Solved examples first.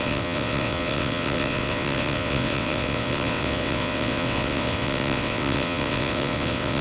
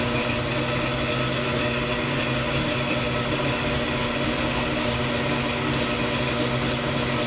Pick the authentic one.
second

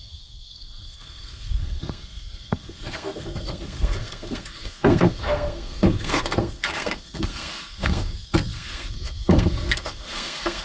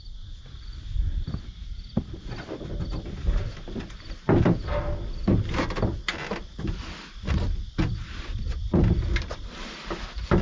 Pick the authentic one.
second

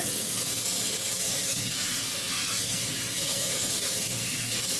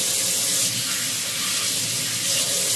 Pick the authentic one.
second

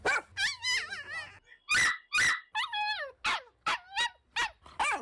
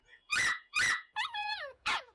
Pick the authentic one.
first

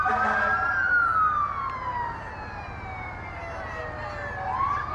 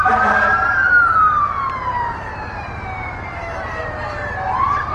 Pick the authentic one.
first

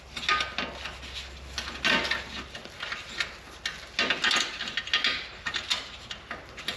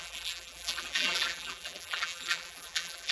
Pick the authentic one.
first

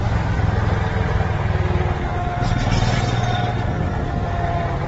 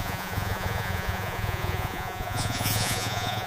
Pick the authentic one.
first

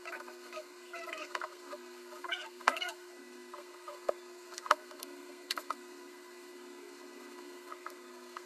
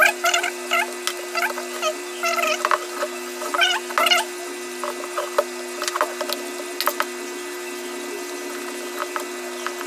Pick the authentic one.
second